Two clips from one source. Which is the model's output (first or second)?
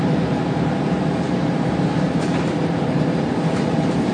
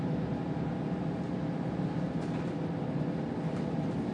first